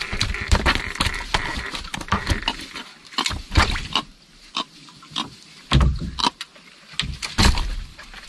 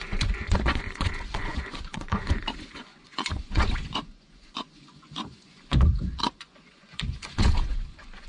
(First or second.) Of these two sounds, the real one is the first